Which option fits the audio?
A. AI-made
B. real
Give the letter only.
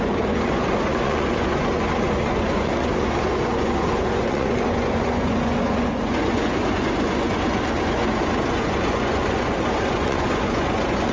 A